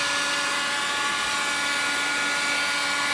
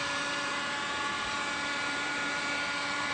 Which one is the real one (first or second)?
first